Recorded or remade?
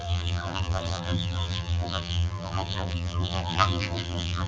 remade